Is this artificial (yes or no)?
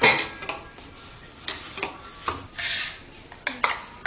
no